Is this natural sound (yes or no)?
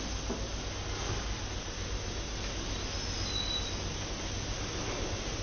yes